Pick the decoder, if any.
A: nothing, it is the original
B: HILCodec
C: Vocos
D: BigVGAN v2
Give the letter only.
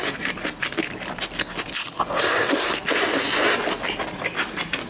A